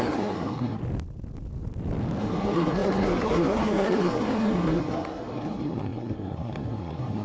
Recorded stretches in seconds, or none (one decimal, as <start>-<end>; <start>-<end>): 0.8-2.2